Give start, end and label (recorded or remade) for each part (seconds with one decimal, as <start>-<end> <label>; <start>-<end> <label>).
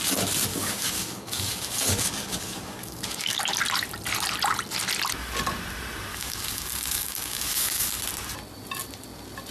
0.0-0.5 recorded; 0.5-3.4 remade; 3.4-6.1 recorded; 6.1-8.0 remade; 8.0-9.5 recorded